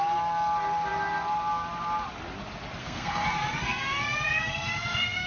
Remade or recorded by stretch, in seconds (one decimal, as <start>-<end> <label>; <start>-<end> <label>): 0.0-2.8 recorded; 2.8-5.3 remade